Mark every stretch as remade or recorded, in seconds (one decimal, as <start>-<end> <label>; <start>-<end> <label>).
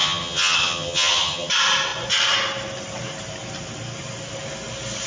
0.0-1.5 remade; 1.5-5.1 recorded